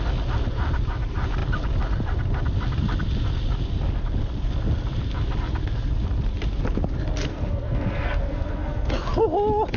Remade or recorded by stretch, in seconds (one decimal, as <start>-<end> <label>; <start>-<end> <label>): 0.0-7.3 recorded; 7.3-8.9 remade; 8.9-9.8 recorded

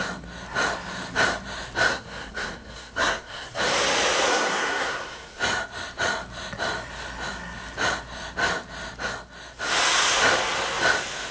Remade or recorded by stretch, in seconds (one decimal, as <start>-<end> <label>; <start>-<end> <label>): 0.0-1.9 recorded; 1.9-3.6 remade; 3.6-4.3 recorded; 4.3-5.4 remade; 5.4-11.3 recorded

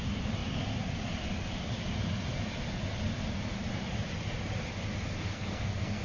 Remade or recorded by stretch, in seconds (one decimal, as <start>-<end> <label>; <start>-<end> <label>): 0.0-5.3 recorded; 5.3-6.0 remade

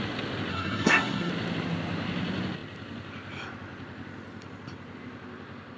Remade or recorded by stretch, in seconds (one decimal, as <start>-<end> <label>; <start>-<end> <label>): 0.0-0.5 recorded; 0.5-1.3 remade; 1.3-5.8 recorded

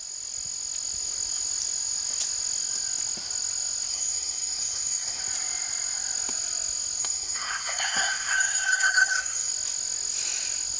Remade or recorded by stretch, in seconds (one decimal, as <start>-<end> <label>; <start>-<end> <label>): 0.0-3.9 recorded; 3.9-5.2 remade; 5.2-7.0 recorded; 7.0-9.5 remade; 9.5-10.8 recorded